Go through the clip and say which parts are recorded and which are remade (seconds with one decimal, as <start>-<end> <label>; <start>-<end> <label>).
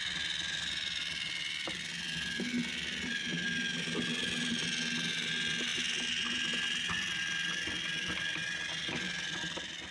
0.0-9.9 recorded